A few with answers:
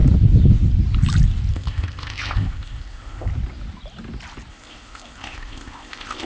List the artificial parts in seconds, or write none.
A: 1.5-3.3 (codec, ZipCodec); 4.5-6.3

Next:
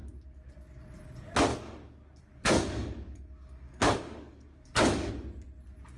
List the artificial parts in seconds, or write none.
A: 1.5-5.1 (codec, DAC)

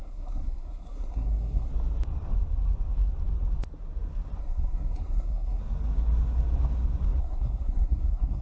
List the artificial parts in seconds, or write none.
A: 0.0-1.7 (codec, SNAC); 4.4-5.6; 7.2-8.4

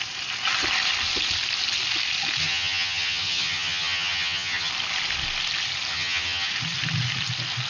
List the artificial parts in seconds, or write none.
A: 2.4-4.7 (vocoder, HiFi-GAN); 5.9-6.5